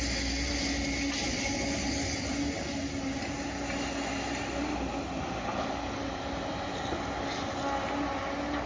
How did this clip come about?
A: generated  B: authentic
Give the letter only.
B